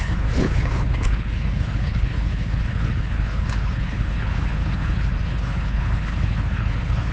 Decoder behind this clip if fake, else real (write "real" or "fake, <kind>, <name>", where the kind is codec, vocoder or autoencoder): fake, codec, HILCodec